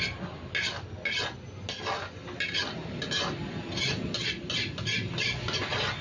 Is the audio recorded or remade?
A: recorded